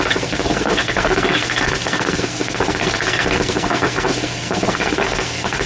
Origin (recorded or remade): remade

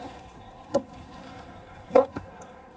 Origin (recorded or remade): remade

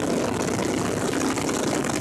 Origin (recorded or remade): recorded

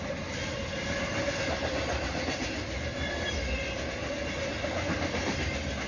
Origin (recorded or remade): recorded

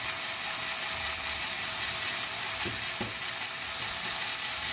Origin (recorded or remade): recorded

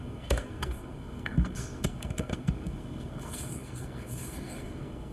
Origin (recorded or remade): remade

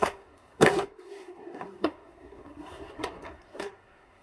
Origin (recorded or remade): remade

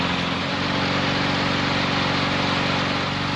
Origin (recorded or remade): recorded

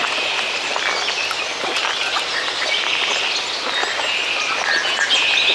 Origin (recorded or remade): recorded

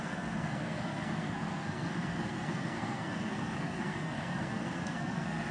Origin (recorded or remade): remade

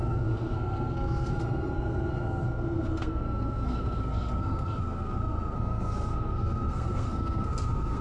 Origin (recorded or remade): remade